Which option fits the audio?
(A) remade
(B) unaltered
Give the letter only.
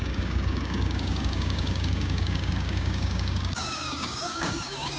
A